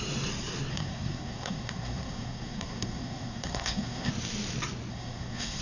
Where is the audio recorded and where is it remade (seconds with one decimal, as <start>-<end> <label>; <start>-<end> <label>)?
0.0-0.7 recorded; 0.7-4.1 remade; 4.1-4.9 recorded; 4.9-5.6 remade